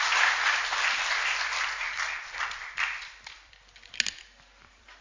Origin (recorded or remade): recorded